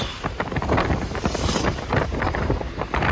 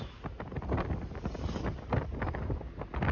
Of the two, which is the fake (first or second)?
first